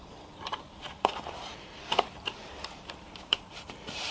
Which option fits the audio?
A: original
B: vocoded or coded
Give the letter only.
B